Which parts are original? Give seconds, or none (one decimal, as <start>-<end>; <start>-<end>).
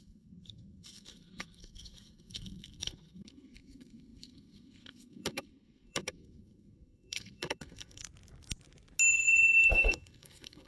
8.0-9.1